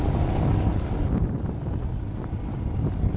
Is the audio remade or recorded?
recorded